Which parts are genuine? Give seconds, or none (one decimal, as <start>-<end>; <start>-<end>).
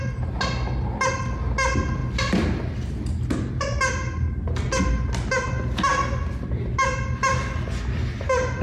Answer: 0.0-8.6